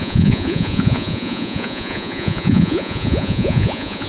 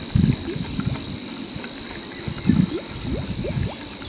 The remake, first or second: first